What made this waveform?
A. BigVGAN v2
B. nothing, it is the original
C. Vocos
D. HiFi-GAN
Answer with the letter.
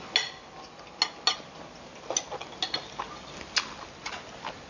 B